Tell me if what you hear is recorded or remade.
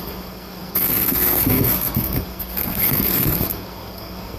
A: remade